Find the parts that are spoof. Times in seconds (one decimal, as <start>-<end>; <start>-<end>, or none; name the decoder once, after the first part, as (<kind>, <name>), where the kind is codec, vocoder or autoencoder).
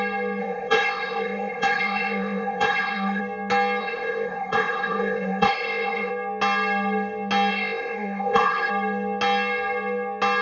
0.4-3.2 (codec, ZipCodec); 3.8-6.1; 7.5-8.7